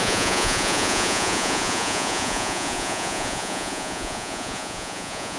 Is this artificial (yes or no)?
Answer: yes